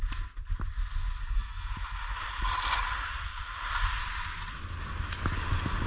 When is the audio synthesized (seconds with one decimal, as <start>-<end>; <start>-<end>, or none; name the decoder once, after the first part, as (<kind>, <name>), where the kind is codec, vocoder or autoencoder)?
1.2-1.7 (codec, SNAC)